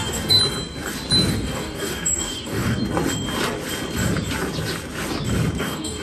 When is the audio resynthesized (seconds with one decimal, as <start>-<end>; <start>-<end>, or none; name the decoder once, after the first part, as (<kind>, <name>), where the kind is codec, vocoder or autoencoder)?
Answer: 0.0-0.4 (codec, DAC); 1.3-2.8; 5.6-6.0